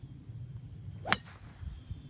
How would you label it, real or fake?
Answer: real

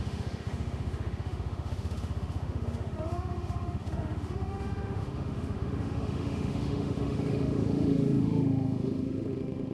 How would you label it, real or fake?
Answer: fake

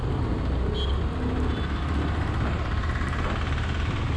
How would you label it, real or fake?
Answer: real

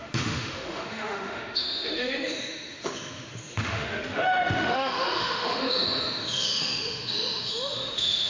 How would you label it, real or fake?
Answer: fake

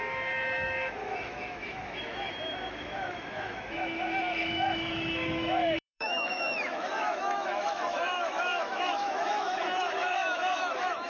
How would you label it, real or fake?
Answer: fake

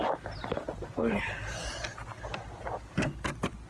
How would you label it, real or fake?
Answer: real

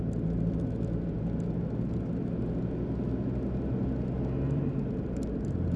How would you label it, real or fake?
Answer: real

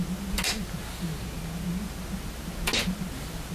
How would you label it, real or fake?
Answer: real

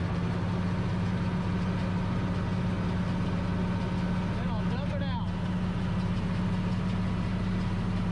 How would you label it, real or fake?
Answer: real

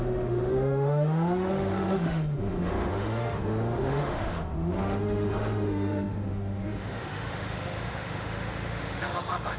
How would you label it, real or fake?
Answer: fake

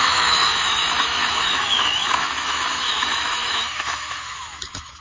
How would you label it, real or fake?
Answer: fake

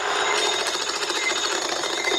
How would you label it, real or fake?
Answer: real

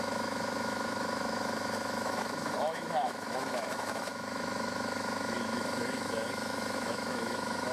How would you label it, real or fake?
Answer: fake